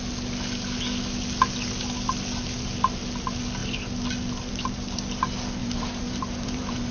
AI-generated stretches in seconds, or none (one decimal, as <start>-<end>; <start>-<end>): 5.6-6.9